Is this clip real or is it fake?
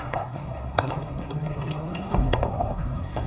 fake